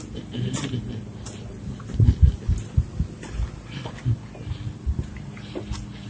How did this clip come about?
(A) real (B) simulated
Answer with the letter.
A